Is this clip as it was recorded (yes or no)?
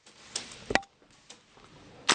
yes